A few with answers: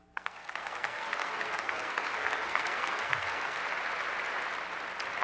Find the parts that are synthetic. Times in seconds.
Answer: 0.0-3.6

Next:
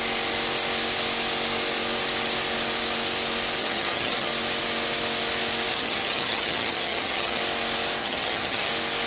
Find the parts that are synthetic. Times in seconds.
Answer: 3.6-4.3; 5.7-7.4; 8.0-8.7